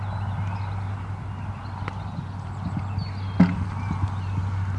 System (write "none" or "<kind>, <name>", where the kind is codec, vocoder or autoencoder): none